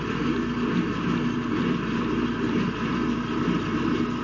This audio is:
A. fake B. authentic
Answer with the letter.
B